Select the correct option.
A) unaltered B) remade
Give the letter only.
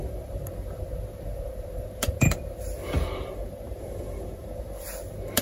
B